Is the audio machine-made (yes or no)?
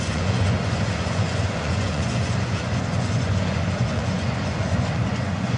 yes